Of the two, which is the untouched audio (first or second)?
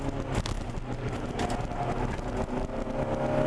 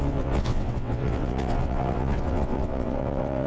first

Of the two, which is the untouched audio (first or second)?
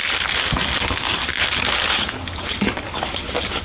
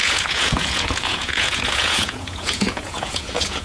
first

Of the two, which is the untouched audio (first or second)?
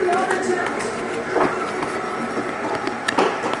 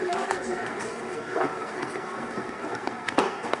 first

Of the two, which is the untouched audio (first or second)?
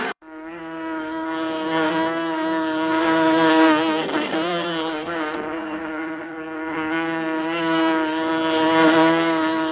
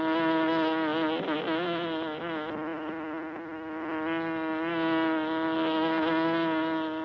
second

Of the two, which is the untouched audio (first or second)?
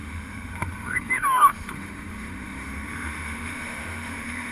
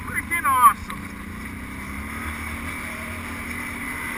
second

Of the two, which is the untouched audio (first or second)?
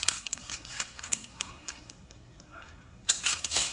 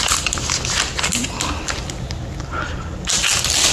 second